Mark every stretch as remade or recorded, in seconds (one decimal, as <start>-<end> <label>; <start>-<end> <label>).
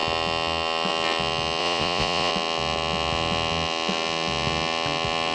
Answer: 0.0-1.6 recorded; 1.6-2.3 remade; 2.3-5.3 recorded